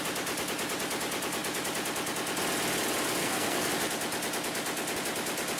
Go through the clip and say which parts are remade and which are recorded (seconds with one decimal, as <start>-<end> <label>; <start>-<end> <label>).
0.0-3.2 recorded; 3.2-3.7 remade; 3.7-5.6 recorded